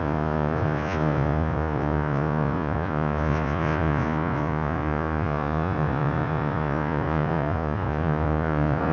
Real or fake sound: fake